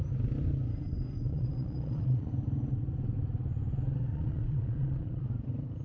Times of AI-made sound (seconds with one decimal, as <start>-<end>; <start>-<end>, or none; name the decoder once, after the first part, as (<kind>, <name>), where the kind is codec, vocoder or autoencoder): 1.3-2.3 (vocoder, Vocos); 4.1-5.2